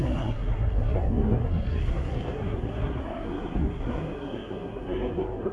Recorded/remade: remade